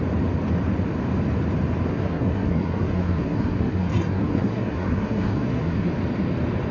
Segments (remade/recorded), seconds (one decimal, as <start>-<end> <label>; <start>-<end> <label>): 0.0-1.9 recorded; 1.9-5.9 remade; 5.9-6.7 recorded

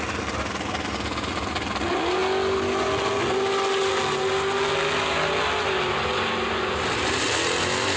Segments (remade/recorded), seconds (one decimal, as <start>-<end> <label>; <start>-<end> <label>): 0.0-8.0 recorded

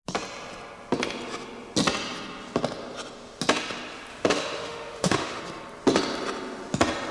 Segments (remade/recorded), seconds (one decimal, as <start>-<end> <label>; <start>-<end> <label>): 0.0-4.1 recorded; 4.1-5.4 remade; 5.4-7.1 recorded

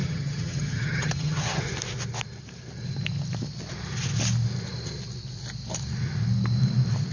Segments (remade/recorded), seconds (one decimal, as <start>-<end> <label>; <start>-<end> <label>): 0.0-1.6 remade; 1.6-7.1 recorded